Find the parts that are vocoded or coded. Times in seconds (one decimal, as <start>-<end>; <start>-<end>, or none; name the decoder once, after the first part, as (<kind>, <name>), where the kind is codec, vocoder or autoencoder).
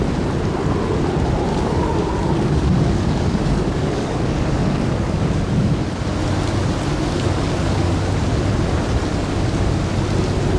1.5-5.8 (codec, DAC); 6.9-7.9; 9.1-9.8